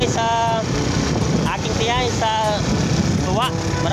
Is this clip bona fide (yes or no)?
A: yes